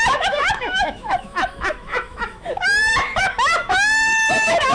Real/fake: fake